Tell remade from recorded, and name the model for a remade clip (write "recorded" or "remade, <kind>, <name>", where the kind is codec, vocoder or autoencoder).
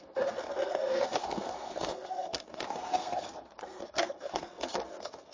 remade, codec, SNAC